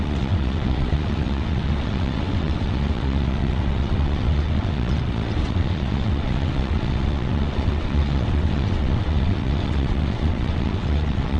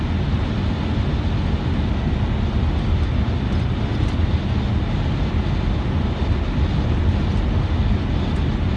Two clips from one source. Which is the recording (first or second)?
second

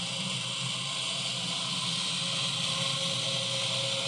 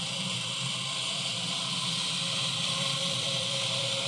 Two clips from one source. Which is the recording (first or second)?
first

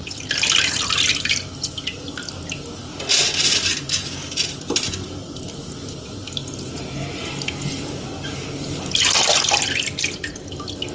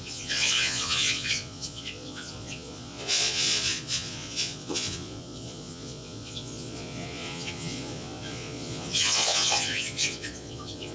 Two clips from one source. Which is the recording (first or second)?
first